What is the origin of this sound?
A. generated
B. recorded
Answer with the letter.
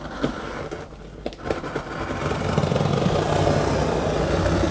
B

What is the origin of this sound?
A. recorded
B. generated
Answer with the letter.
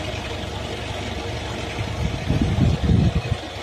A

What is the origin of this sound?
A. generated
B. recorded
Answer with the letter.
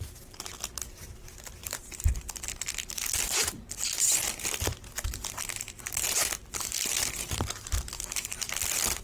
B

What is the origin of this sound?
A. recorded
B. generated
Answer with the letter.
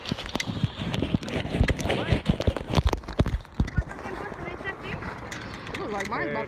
A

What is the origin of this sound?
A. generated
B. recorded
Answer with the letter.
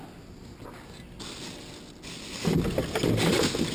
B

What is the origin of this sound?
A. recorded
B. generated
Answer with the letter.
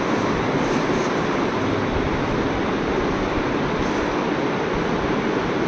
A